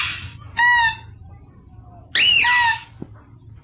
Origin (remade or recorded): recorded